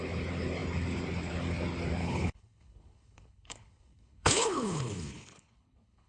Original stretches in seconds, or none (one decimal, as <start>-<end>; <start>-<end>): 0.0-2.0